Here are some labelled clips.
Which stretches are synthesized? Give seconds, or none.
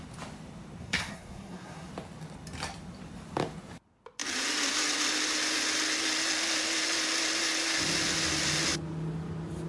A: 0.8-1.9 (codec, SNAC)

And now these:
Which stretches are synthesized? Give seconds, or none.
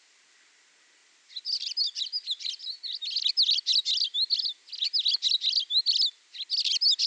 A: none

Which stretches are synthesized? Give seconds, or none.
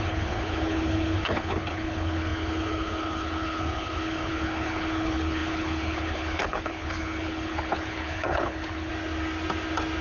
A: 0.0-8.9 (codec, HILCodec)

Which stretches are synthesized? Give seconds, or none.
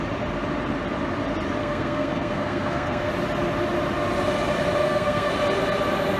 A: 1.6-3.1 (codec, SNAC); 4.8-5.3